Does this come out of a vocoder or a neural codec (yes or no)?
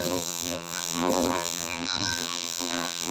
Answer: yes